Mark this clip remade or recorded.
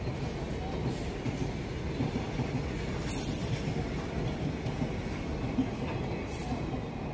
recorded